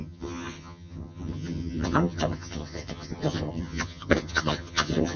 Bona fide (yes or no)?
no